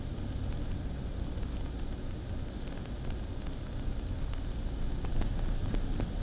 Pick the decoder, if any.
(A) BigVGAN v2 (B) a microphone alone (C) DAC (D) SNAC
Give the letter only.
B